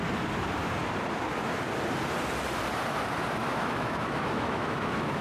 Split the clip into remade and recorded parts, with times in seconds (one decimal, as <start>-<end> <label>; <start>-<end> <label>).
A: 0.0-3.4 recorded; 3.4-5.2 remade